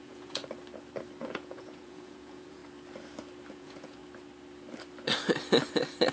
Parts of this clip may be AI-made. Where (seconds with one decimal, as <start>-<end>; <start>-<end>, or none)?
0.0-0.4; 1.2-2.6; 3.5-4.0